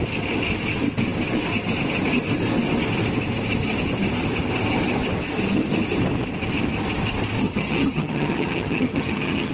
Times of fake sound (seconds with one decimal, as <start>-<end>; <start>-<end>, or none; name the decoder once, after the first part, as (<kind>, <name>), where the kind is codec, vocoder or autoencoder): 7.4-9.5 (vocoder, HiFi-GAN)